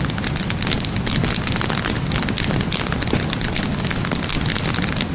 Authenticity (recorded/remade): recorded